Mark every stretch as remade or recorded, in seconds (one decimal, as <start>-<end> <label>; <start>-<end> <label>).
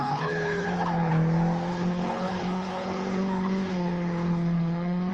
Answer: 0.0-1.1 remade; 1.1-1.7 recorded; 1.7-5.1 remade